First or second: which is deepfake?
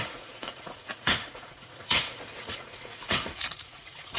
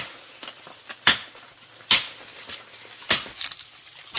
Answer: first